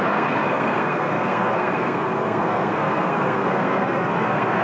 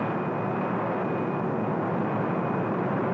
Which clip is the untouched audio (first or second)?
second